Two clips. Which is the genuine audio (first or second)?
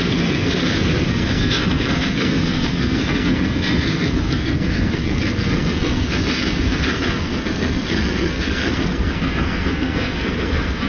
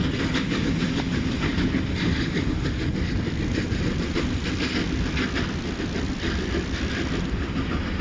second